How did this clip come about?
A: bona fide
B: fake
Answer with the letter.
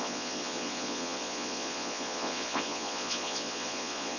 B